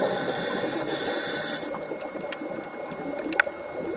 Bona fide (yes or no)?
yes